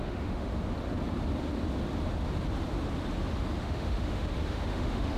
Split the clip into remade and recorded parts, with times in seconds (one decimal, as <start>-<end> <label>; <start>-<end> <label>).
0.0-0.5 remade; 0.5-3.6 recorded; 3.6-5.2 remade